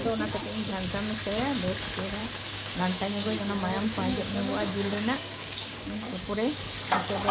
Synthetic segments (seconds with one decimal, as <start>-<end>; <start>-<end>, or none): 2.2-6.6